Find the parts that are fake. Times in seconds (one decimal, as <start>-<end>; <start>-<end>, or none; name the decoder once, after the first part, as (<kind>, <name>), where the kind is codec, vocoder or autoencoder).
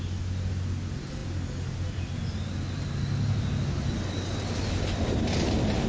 none